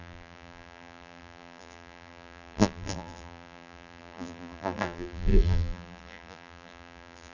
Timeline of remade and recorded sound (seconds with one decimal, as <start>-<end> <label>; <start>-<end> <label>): 0.0-7.3 remade